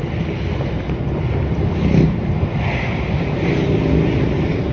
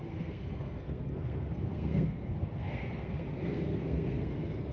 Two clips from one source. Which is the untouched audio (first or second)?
first